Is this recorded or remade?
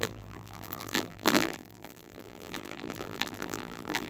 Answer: remade